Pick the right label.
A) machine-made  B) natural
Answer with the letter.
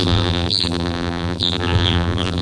A